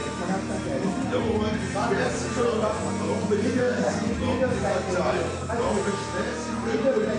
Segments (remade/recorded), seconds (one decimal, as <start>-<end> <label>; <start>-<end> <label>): 0.0-3.6 recorded; 3.6-4.1 remade; 4.1-7.2 recorded